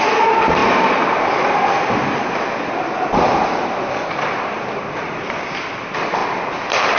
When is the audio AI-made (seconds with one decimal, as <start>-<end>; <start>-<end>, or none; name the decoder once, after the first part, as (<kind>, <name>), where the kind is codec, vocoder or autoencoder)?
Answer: none